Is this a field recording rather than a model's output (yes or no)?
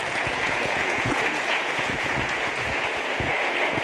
no